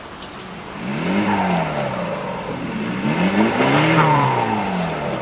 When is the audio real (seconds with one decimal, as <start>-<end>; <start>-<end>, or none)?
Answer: 0.0-5.2